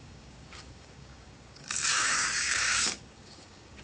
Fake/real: fake